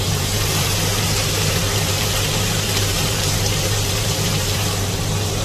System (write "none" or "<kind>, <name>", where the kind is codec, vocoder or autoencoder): vocoder, BigVGAN v2